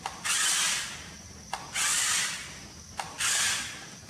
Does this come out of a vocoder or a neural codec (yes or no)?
no